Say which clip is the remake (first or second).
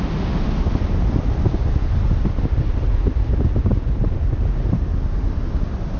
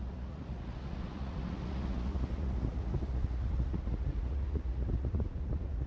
second